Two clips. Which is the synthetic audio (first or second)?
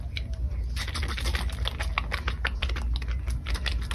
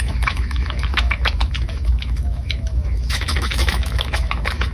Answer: second